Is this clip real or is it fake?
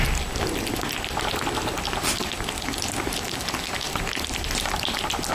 real